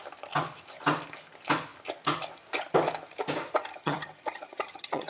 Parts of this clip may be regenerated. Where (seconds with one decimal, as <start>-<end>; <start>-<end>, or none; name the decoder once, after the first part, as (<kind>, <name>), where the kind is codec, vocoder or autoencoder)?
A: 3.7-5.1 (vocoder, HiFi-GAN)